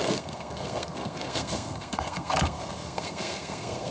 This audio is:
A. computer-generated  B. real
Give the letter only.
A